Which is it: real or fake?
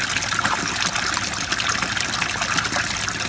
real